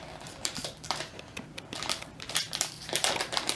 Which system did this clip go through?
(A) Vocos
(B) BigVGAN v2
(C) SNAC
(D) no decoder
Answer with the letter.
B